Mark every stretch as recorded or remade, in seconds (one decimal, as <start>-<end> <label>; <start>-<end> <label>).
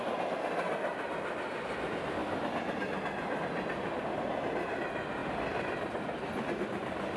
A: 0.0-7.2 recorded